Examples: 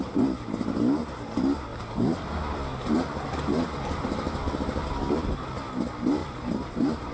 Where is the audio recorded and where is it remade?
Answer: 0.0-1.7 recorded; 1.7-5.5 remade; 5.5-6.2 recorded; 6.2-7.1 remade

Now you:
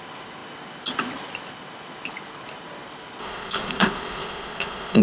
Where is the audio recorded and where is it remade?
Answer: 0.0-3.2 recorded; 3.2-5.0 remade

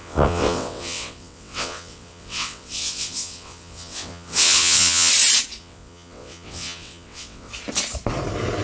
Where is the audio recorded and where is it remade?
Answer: 0.0-5.1 remade; 5.1-5.6 recorded; 5.6-7.5 remade; 7.5-8.6 recorded

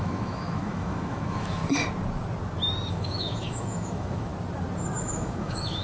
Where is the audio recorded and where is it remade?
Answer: 0.0-1.6 remade; 1.6-2.9 recorded; 2.9-4.3 remade; 4.3-5.0 recorded; 5.0-5.8 remade

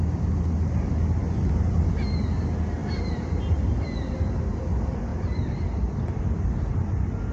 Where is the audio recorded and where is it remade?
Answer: 0.0-1.2 recorded; 1.2-1.9 remade; 1.9-2.8 recorded; 2.8-4.3 remade; 4.3-5.1 recorded; 5.1-6.2 remade; 6.2-7.3 recorded